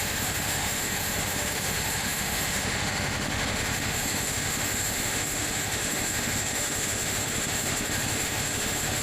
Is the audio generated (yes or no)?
yes